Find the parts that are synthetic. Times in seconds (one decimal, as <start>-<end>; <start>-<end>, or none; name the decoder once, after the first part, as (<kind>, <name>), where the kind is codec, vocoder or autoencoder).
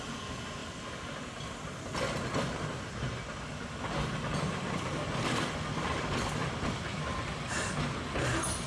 0.6-1.6 (vocoder, BigVGAN v2); 6.4-7.3